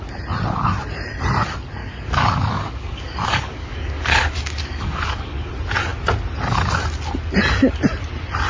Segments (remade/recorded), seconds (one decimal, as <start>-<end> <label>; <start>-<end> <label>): 0.0-1.8 recorded; 1.8-5.5 remade; 5.5-8.5 recorded